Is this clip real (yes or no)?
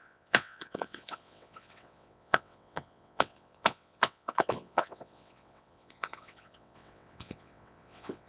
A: no